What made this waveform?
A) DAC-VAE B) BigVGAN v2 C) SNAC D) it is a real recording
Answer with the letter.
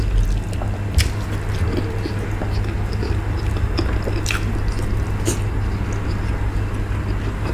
D